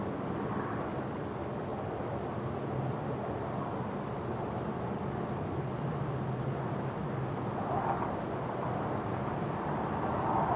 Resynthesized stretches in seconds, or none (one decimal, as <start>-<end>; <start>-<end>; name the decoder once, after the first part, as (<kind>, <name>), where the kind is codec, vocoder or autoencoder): none